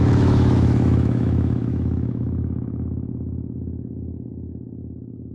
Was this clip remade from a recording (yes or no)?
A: yes